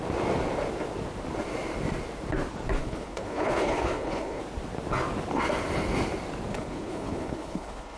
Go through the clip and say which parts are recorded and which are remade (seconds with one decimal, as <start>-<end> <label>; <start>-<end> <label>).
0.0-2.8 recorded; 2.8-4.4 remade; 4.4-6.5 recorded; 6.5-8.0 remade